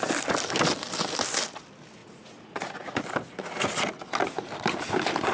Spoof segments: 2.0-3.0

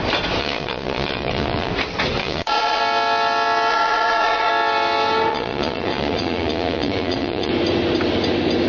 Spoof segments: 0.4-1.7; 2.2-2.8; 3.7-4.5; 5.3-7.5

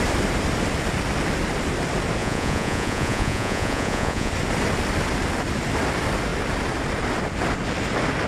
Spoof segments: 2.2-4.3

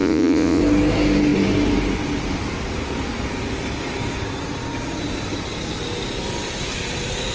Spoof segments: 0.0-0.6

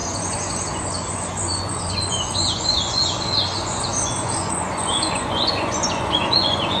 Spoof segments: 0.0-6.8

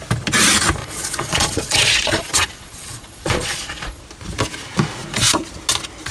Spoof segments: 0.8-4.0

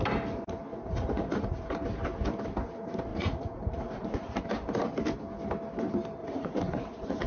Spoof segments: 0.7-1.7; 3.1-4.4; 6.2-7.3